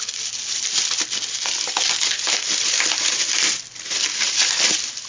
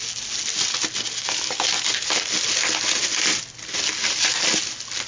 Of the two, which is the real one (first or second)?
second